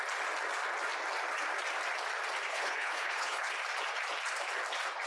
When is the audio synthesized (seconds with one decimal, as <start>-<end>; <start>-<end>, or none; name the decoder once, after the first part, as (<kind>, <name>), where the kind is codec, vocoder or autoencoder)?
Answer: 2.5-3.5 (codec, HILCodec)